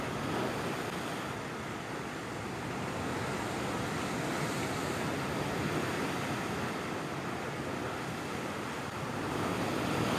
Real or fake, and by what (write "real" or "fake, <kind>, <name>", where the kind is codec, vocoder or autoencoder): real